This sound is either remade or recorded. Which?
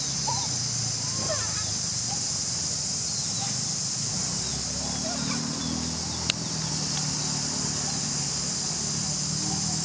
recorded